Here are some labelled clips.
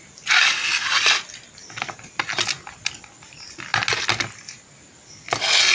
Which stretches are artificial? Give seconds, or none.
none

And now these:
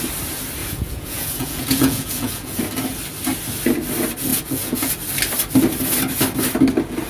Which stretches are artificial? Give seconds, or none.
0.6-2.6 (vocoder, Vocos); 4.3-4.9

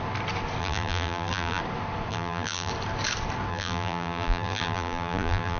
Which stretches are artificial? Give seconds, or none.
0.6-1.6 (vocoder, BigVGAN v2); 2.1-2.7; 3.5-5.6

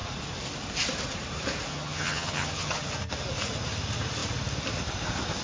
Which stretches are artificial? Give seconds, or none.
1.7-2.8 (vocoder, HiFi-GAN)

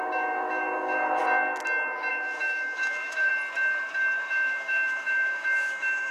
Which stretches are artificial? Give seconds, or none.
0.0-1.2 (autoencoder, DAC-VAE); 2.1-3.3; 4.3-6.1

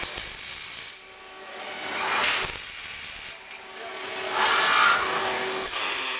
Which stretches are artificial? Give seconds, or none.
5.0-5.8 (codec, DAC)

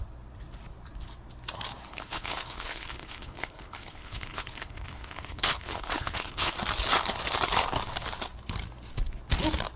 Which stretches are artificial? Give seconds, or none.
1.9-6.5 (codec, HILCodec)

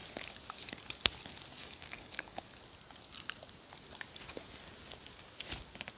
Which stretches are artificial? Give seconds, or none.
1.6-2.4 (codec, DAC)